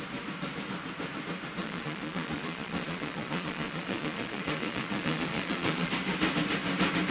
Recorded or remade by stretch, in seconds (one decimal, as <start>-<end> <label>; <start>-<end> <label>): 0.0-1.6 recorded; 1.6-5.9 remade; 5.9-7.1 recorded